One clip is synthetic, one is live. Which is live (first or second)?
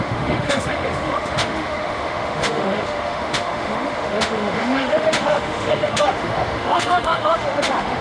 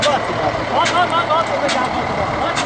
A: second